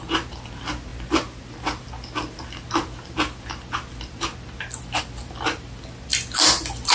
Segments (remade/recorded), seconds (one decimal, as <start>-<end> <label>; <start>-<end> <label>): 0.0-6.9 recorded